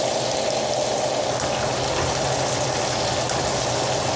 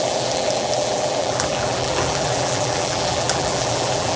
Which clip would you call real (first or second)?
first